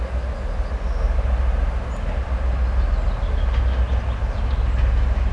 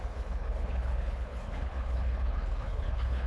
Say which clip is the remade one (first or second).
second